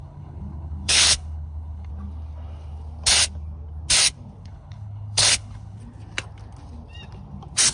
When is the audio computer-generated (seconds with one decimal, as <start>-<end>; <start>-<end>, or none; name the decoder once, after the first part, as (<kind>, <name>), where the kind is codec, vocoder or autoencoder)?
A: 0.0-1.9 (codec, HILCodec); 4.4-5.8